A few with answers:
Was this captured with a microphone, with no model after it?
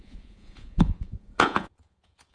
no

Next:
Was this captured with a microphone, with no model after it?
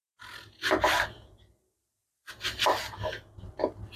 yes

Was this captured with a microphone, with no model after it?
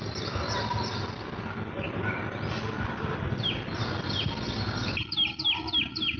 yes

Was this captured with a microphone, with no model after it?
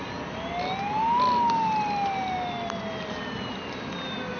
yes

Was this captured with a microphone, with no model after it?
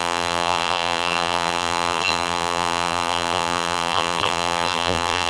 no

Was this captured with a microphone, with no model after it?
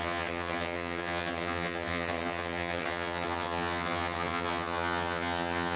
no